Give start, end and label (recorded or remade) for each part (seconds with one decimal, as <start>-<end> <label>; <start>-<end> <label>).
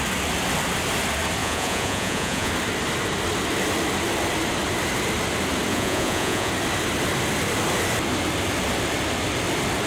0.0-1.4 recorded; 1.4-2.5 remade; 2.5-5.7 recorded; 5.7-6.5 remade; 6.5-9.9 recorded